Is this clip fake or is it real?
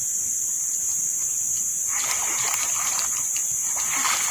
real